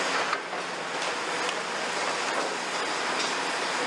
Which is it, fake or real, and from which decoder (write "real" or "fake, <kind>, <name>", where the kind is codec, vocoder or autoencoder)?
real